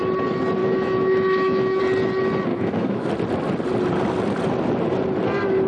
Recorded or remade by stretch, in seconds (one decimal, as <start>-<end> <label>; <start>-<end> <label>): 0.0-0.6 recorded; 0.6-1.8 remade; 1.8-2.5 recorded; 2.5-3.1 remade; 3.1-5.7 recorded